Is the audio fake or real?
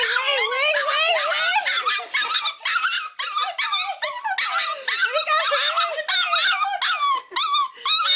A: real